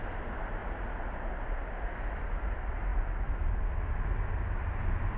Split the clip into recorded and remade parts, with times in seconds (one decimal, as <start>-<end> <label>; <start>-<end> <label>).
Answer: 0.0-5.2 recorded